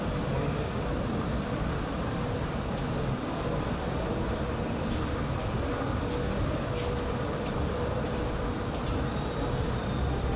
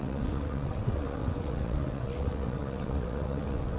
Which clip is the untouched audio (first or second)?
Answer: first